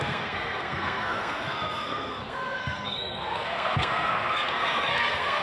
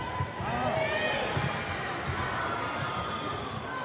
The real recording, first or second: second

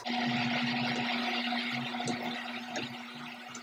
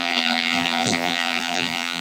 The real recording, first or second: first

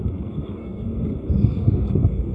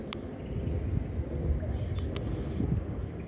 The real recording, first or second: second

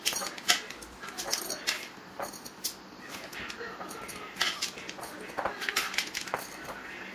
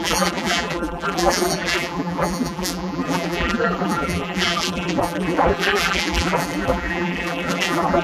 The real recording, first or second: first